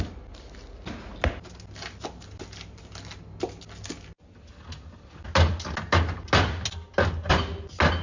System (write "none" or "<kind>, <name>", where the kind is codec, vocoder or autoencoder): none